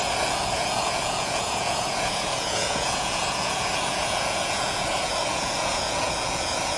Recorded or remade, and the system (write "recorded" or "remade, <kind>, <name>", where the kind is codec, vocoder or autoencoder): remade, vocoder, Vocos